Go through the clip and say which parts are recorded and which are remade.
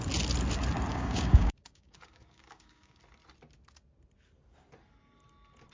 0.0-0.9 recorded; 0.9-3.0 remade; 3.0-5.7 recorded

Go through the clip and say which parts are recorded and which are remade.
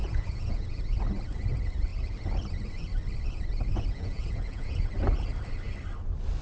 0.0-0.8 remade; 0.8-3.7 recorded; 3.7-4.9 remade; 4.9-6.4 recorded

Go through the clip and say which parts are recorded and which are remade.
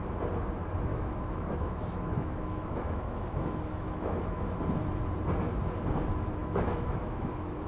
0.0-0.9 recorded; 0.9-4.6 remade; 4.6-6.4 recorded; 6.4-7.7 remade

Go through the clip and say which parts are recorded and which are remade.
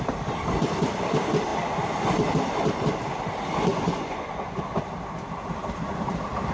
0.0-3.7 recorded; 3.7-4.6 remade; 4.6-6.5 recorded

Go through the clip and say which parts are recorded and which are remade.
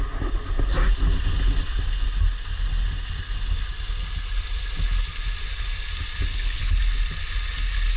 0.0-6.3 recorded; 6.3-6.8 remade; 6.8-8.0 recorded